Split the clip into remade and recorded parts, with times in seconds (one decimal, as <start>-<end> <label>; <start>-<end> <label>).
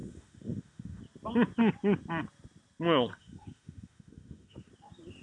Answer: 0.0-1.0 remade; 1.0-3.1 recorded; 3.1-4.7 remade; 4.7-5.2 recorded